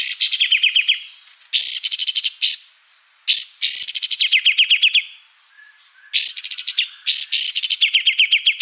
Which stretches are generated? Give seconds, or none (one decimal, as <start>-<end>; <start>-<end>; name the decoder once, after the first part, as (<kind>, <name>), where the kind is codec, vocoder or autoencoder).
none